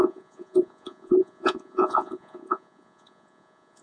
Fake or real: fake